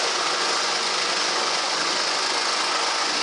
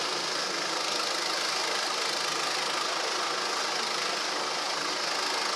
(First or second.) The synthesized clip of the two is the first